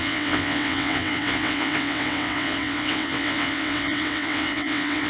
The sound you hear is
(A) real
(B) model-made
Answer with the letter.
B